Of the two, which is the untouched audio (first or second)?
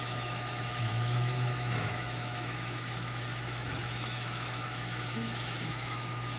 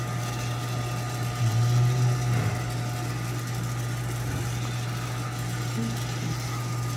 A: second